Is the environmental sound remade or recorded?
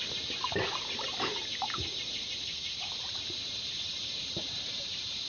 remade